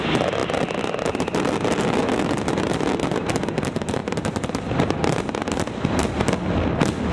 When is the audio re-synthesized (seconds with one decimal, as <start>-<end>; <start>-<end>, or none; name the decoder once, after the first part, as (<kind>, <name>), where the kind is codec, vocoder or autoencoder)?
none

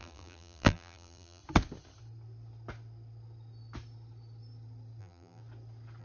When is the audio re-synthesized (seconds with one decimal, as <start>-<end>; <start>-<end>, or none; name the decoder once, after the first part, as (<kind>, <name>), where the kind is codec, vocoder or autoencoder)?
0.0-1.4 (vocoder, BigVGAN v2); 5.0-5.4

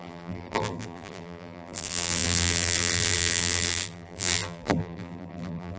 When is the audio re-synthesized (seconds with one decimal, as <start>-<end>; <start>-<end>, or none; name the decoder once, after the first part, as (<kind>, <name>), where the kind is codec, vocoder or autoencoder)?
0.0-5.8 (vocoder, BigVGAN v2)

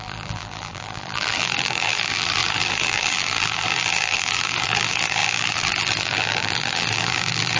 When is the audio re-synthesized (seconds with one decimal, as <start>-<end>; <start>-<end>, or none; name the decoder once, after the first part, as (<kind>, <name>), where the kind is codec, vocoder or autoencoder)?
0.0-7.6 (vocoder, BigVGAN v2)